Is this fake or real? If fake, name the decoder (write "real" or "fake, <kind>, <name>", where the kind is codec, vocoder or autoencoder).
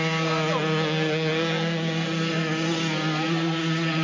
real